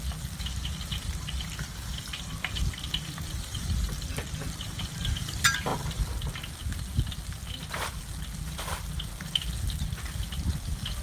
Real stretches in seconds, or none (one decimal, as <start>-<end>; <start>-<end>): 0.0-11.0